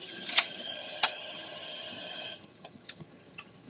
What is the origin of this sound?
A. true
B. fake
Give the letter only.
B